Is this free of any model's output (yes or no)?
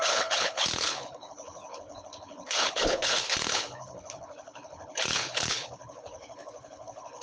no